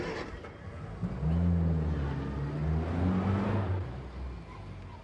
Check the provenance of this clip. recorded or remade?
recorded